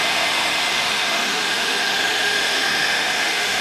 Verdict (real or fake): fake